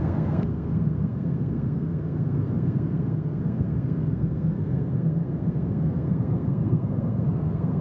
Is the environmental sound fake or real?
fake